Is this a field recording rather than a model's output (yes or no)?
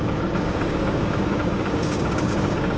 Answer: no